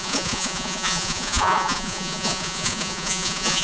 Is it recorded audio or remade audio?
remade